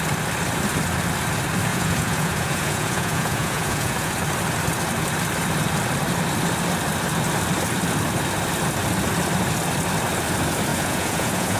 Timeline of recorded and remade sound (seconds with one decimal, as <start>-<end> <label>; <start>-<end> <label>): 0.0-1.7 recorded; 1.7-4.1 remade; 4.1-10.7 recorded; 10.7-11.6 remade